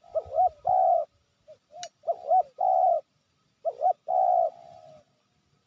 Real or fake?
real